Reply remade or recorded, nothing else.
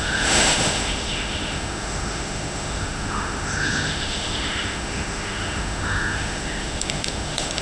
remade